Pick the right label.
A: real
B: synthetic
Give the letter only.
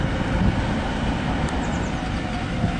A